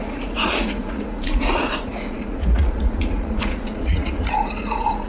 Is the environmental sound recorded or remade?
remade